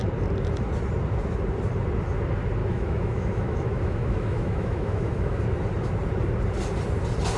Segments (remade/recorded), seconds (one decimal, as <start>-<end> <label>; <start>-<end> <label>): 0.0-2.6 recorded; 2.6-5.4 remade; 5.4-7.4 recorded